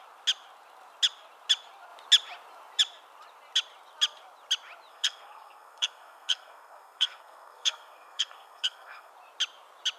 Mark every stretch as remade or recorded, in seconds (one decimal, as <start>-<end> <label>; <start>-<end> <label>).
0.0-4.9 recorded; 4.9-9.1 remade; 9.1-10.0 recorded